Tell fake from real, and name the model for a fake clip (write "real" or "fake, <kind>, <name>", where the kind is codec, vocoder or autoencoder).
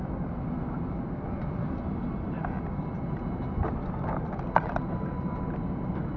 real